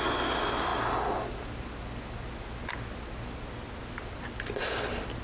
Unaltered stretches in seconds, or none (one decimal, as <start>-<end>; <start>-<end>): 0.0-5.2